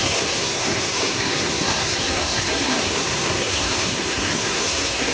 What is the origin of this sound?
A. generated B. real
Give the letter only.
A